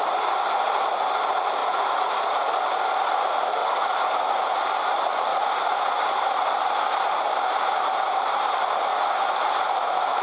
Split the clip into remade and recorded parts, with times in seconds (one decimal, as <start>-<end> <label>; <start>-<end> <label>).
0.0-1.6 recorded; 1.6-2.5 remade; 2.5-3.6 recorded; 3.6-4.6 remade; 4.6-5.3 recorded; 5.3-6.0 remade; 6.0-8.9 recorded; 8.9-10.2 remade